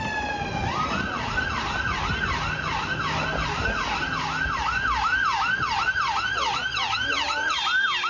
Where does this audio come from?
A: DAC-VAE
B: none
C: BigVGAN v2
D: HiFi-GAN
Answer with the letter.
B